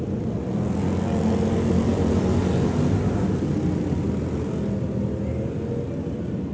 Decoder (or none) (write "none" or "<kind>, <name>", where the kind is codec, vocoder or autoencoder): none